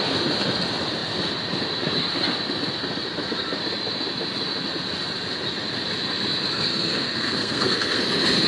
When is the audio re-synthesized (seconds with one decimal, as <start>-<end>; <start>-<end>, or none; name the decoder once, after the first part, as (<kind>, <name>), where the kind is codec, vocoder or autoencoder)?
6.7-8.0 (codec, SNAC)